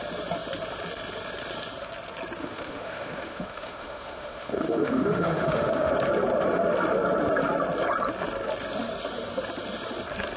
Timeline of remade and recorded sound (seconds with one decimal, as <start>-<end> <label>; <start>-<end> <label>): 0.0-2.4 recorded; 2.4-5.9 remade; 5.9-10.4 recorded